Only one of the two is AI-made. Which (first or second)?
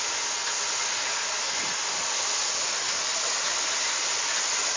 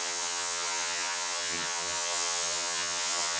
second